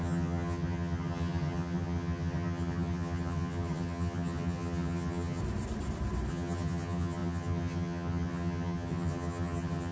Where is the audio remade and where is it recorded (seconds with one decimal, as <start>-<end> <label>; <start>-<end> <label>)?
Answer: 0.0-5.4 remade; 5.4-6.3 recorded; 6.3-9.9 remade

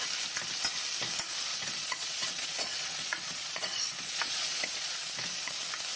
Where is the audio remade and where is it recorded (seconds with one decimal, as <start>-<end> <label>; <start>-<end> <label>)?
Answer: 0.0-1.5 recorded; 1.5-5.1 remade; 5.1-6.0 recorded

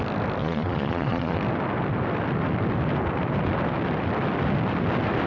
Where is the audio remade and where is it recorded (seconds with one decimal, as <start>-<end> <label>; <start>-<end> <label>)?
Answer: 0.0-0.4 recorded; 0.4-1.4 remade; 1.4-5.3 recorded

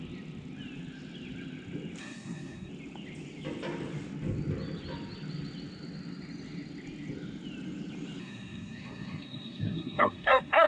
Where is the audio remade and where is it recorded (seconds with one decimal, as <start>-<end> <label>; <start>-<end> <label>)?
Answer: 0.0-2.0 recorded; 2.0-2.7 remade; 2.7-8.2 recorded; 8.2-10.7 remade

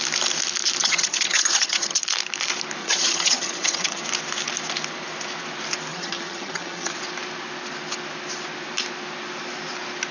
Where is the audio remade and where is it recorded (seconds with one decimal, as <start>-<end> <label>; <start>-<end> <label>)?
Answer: 0.0-0.8 recorded; 0.8-2.0 remade; 2.0-2.8 recorded; 2.8-4.0 remade; 4.0-5.9 recorded; 5.9-6.9 remade; 6.9-10.1 recorded

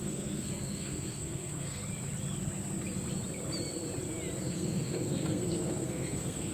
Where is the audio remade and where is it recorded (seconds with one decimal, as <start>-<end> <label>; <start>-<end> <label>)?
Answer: 0.0-1.8 remade; 1.8-4.4 recorded; 4.4-6.5 remade

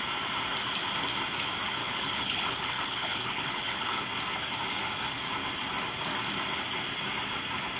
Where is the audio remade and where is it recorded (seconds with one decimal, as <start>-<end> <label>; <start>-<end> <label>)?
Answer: 0.0-1.8 recorded; 1.8-4.0 remade; 4.0-7.8 recorded

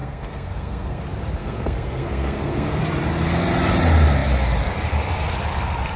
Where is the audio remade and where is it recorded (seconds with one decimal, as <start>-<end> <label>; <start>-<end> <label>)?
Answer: 0.0-1.0 remade; 1.0-1.4 recorded; 1.4-2.8 remade; 2.8-6.0 recorded